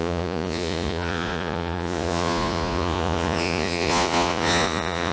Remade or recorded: remade